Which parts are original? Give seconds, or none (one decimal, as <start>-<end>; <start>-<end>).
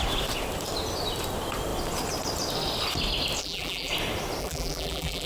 0.0-3.4; 3.9-4.4